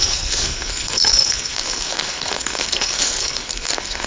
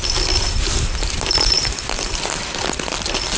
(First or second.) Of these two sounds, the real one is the second